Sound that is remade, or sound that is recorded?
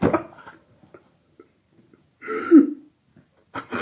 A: recorded